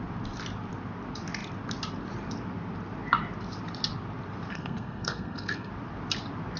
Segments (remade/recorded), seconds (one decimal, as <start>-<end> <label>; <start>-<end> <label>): 0.0-4.5 recorded; 4.5-5.7 remade; 5.7-6.6 recorded